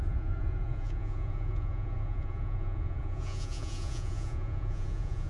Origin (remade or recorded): remade